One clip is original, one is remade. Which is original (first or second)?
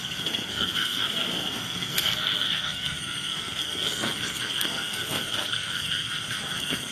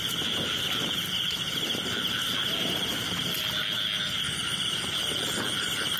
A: second